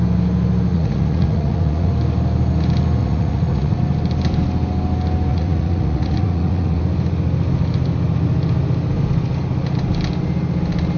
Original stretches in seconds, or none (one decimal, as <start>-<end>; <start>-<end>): 0.0-0.7; 1.9-3.0; 3.8-5.3; 6.8-11.0